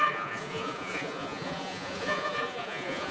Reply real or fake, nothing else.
fake